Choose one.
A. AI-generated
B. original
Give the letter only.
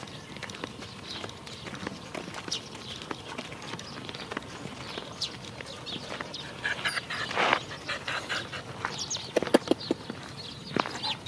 B